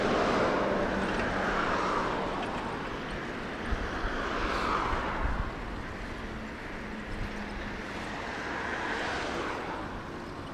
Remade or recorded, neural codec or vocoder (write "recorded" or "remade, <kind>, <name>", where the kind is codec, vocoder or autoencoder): recorded